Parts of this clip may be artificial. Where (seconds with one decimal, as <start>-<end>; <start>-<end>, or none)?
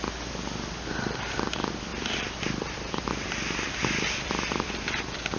1.9-5.0